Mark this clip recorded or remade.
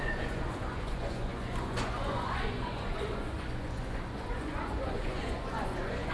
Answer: remade